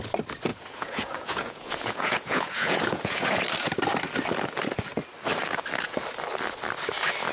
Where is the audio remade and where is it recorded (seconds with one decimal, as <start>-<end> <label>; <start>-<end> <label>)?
0.0-0.5 recorded; 0.5-3.4 remade; 3.4-7.3 recorded